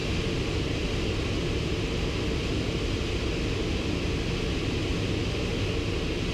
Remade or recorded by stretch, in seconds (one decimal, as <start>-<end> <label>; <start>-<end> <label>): 0.0-1.1 remade; 1.1-4.9 recorded; 4.9-5.4 remade; 5.4-6.3 recorded